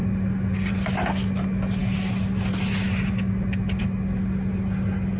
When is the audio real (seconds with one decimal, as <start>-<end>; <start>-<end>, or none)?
0.0-5.2

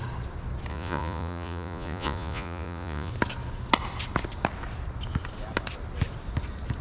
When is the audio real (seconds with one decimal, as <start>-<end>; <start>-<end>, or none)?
0.0-0.7; 3.1-6.8